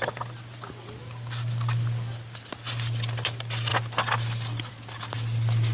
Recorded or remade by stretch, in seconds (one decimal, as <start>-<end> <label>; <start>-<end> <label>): 0.0-5.7 recorded